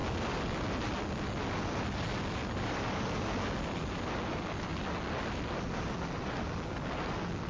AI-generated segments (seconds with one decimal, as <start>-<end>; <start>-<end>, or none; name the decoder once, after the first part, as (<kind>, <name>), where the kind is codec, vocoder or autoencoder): none